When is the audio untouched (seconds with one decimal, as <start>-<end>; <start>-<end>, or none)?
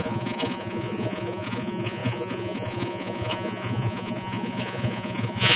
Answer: none